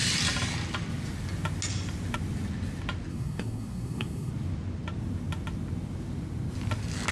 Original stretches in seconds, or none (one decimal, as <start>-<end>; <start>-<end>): 0.0-3.1; 4.3-7.1